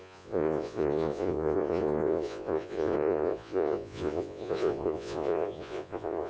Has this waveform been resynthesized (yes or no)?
yes